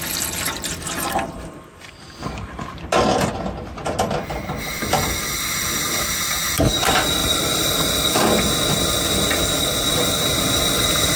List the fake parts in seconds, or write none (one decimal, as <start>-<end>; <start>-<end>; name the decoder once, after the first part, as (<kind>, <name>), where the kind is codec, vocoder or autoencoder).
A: 7.2-8.4 (vocoder, BigVGAN v2)